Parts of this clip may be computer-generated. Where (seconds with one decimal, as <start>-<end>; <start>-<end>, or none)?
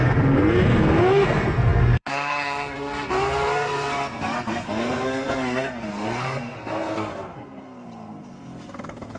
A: 0.0-9.2